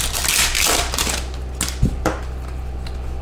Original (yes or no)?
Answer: yes